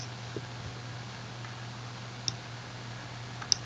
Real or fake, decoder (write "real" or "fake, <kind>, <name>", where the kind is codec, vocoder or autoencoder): real